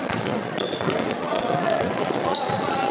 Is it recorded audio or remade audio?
remade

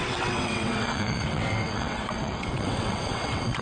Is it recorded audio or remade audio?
remade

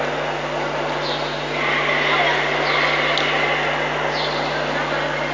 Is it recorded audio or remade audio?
recorded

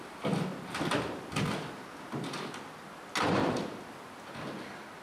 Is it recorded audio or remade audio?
recorded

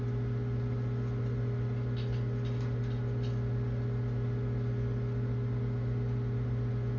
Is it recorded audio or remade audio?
recorded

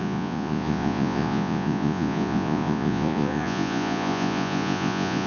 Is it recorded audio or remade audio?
remade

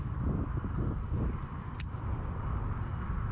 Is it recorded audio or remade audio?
recorded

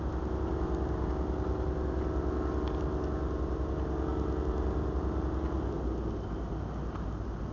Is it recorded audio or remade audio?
recorded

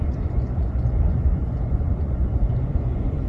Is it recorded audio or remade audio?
remade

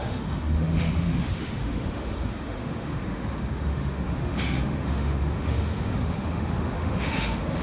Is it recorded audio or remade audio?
remade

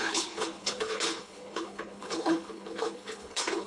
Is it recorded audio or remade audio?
remade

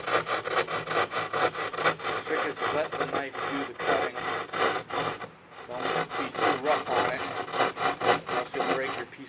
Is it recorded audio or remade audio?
recorded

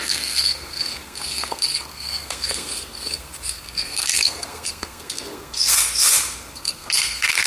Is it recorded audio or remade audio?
remade